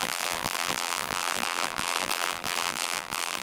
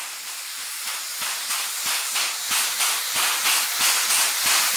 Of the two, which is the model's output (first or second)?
first